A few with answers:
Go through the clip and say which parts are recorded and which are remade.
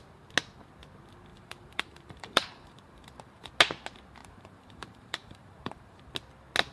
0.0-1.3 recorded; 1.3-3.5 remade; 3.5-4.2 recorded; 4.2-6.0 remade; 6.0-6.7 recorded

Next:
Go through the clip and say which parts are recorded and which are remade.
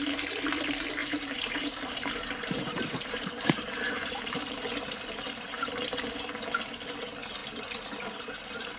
0.0-1.0 recorded; 1.0-6.1 remade; 6.1-8.8 recorded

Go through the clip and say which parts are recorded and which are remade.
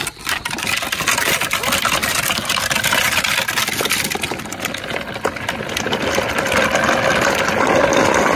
0.0-8.4 recorded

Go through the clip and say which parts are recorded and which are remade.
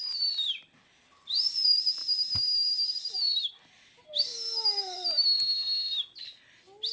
0.0-2.0 remade; 2.0-2.9 recorded; 2.9-4.3 remade; 4.3-6.9 recorded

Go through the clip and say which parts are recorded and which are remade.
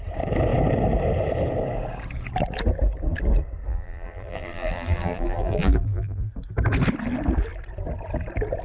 0.0-3.7 recorded; 3.7-6.3 remade; 6.3-8.6 recorded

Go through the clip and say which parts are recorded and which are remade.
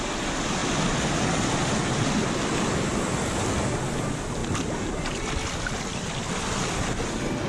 0.0-0.6 recorded; 0.6-2.1 remade; 2.1-2.9 recorded; 2.9-3.8 remade; 3.8-4.4 recorded; 4.4-6.3 remade; 6.3-7.5 recorded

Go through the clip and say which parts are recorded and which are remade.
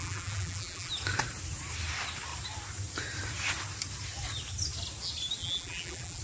0.0-0.9 remade; 0.9-5.4 recorded; 5.4-6.2 remade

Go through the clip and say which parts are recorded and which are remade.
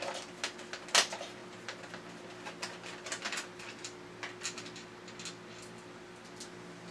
0.0-6.9 recorded